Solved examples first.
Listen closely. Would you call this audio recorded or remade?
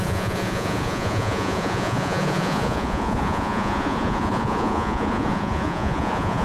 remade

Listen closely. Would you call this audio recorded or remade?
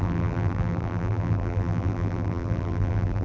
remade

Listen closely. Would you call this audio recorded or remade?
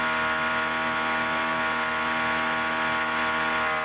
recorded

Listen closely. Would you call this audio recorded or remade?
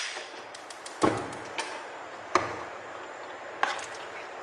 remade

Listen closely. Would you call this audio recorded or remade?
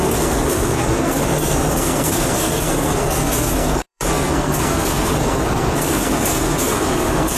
remade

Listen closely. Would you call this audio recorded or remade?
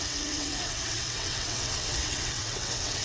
remade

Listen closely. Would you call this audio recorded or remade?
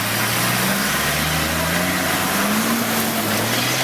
recorded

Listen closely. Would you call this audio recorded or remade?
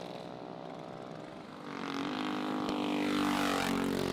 recorded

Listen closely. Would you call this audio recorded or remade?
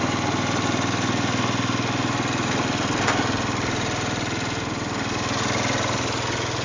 recorded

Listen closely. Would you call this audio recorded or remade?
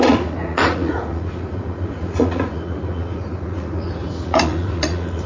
remade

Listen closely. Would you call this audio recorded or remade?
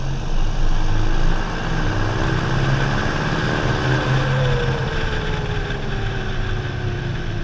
recorded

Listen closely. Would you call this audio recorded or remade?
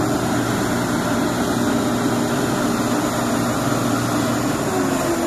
recorded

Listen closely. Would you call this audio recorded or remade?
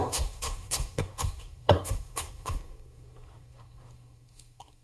remade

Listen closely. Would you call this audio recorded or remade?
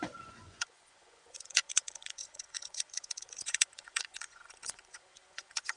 remade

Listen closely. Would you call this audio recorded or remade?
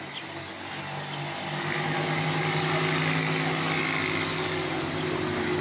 recorded